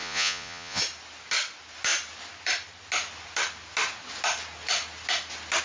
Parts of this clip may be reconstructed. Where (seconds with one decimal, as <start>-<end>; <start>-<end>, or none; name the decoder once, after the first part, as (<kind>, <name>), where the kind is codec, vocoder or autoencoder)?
0.0-0.8 (vocoder, Vocos)